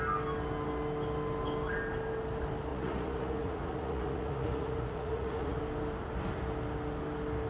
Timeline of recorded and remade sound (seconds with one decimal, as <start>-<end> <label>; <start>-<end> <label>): 0.0-2.7 recorded; 2.7-5.6 remade; 5.6-7.5 recorded